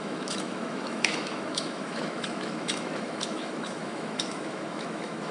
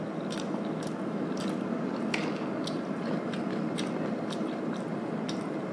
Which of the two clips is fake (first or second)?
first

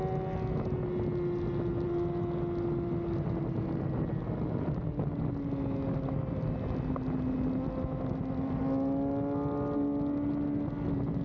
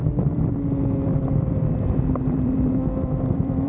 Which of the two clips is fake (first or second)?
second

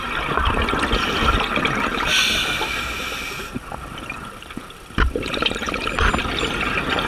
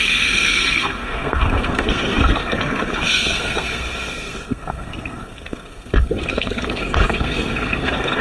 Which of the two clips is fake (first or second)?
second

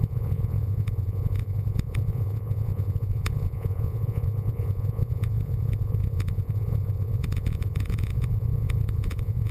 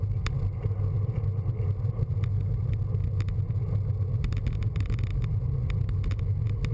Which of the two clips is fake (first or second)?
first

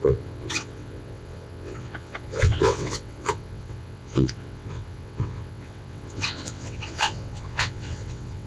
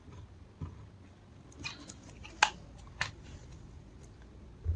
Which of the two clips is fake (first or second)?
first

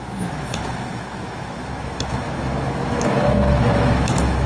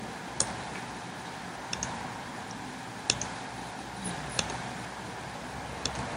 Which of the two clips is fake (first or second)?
first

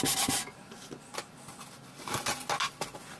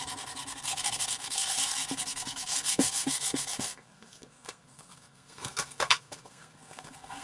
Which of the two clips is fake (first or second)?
second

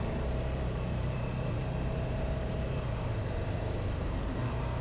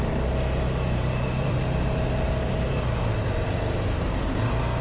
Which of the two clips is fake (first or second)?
first